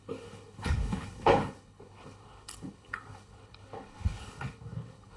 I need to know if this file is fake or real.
fake